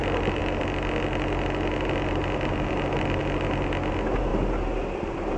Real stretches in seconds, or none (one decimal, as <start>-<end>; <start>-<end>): 0.0-5.4